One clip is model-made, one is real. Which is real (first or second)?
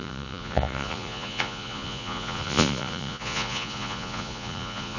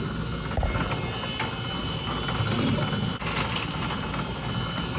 second